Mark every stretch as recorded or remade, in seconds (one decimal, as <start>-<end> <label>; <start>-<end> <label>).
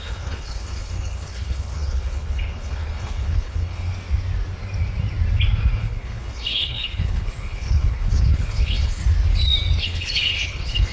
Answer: 0.0-3.9 remade; 3.9-5.8 recorded; 5.8-9.0 remade; 9.0-9.8 recorded; 9.8-10.9 remade